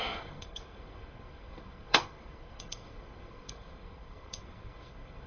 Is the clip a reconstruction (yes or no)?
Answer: yes